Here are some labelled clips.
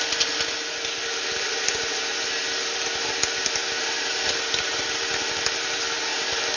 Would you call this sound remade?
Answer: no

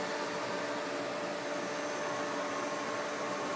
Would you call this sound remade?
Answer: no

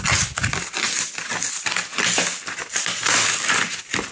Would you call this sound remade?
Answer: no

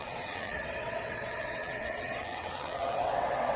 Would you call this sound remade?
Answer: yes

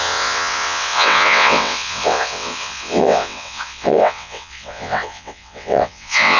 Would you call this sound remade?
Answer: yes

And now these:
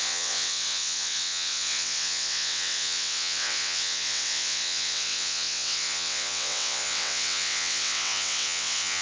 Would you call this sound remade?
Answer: yes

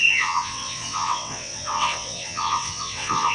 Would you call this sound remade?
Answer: yes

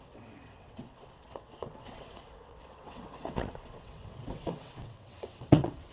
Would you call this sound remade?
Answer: yes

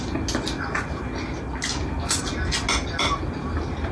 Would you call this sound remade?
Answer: no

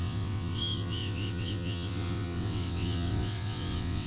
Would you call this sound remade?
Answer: yes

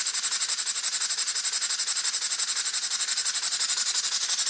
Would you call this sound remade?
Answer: no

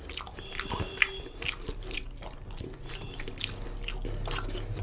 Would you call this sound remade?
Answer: no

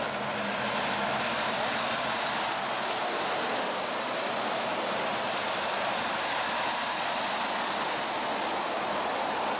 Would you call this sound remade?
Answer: no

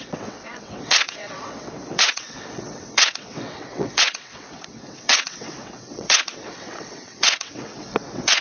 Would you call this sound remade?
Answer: yes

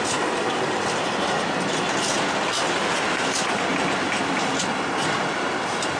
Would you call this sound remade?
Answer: no